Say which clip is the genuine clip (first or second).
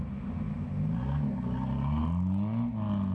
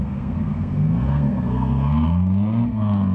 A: first